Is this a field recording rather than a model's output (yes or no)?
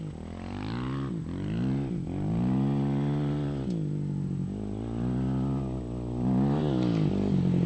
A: yes